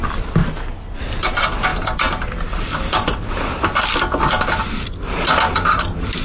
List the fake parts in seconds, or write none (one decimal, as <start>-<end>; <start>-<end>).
none